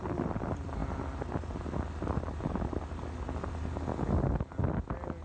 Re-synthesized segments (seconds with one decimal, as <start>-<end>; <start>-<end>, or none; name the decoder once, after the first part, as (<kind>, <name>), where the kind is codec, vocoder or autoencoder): none